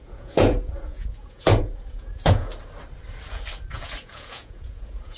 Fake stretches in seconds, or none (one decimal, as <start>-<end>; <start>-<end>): 0.0-2.5; 3.7-5.2